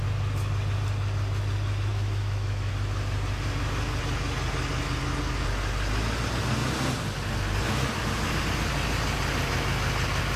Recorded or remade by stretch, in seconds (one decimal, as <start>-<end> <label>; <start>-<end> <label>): 0.0-1.9 recorded; 1.9-2.7 remade; 2.7-10.4 recorded